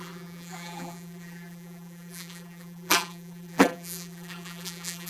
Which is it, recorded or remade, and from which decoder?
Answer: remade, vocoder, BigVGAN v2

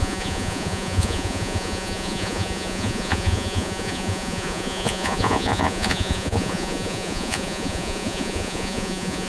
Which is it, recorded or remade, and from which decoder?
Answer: remade, vocoder, Vocos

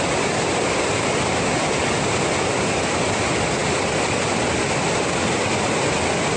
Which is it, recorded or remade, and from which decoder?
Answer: recorded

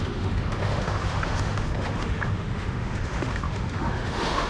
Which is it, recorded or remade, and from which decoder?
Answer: remade, autoencoder, DAC-VAE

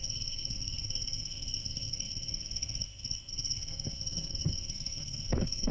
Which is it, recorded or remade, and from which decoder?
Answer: remade, codec, SNAC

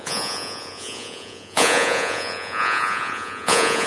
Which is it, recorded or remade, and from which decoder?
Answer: remade, vocoder, Vocos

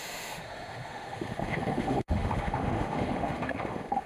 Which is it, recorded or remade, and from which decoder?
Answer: remade, autoencoder, DAC-VAE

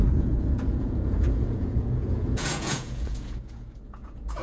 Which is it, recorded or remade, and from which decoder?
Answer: remade, vocoder, Vocos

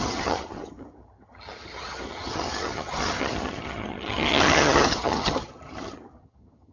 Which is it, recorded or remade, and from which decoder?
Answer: remade, vocoder, HiFi-GAN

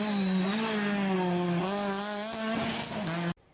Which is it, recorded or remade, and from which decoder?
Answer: recorded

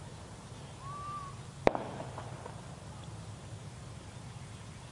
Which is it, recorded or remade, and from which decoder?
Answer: recorded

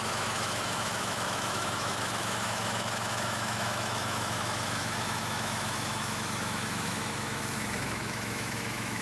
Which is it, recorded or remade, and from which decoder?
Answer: remade, autoencoder, DAC-VAE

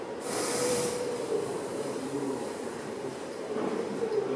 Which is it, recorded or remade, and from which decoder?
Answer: remade, vocoder, BigVGAN v2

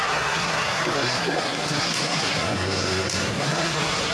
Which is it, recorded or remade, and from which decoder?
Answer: remade, codec, SNAC